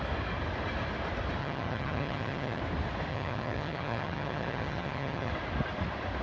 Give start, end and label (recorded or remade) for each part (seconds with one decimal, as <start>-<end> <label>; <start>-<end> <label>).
0.0-1.4 recorded; 1.4-2.6 remade; 2.6-3.1 recorded; 3.1-5.3 remade; 5.3-6.2 recorded